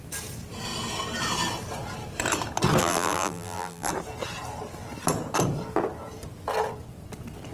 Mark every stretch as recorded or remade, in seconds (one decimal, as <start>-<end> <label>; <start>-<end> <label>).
0.0-2.8 recorded; 2.8-3.9 remade; 3.9-7.5 recorded